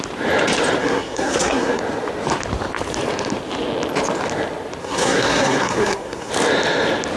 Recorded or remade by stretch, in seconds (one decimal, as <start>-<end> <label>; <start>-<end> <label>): 0.0-0.8 recorded; 0.8-1.8 remade; 1.8-4.8 recorded; 4.8-6.3 remade; 6.3-7.2 recorded